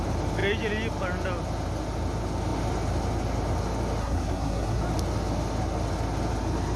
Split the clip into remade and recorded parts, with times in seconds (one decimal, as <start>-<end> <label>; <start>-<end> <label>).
0.0-4.0 recorded; 4.0-4.8 remade; 4.8-6.8 recorded